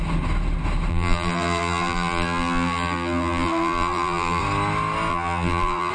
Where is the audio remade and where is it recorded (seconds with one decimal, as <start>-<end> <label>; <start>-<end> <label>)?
0.0-0.9 recorded; 0.9-4.4 remade; 4.4-5.1 recorded; 5.1-5.9 remade